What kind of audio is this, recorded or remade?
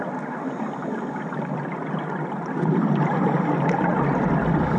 recorded